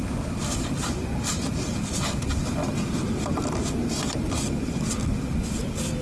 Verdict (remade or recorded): recorded